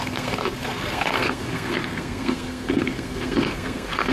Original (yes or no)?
no